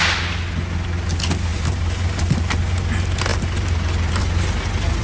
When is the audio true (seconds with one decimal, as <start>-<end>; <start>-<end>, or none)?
0.0-1.5; 2.2-3.3; 4.2-5.0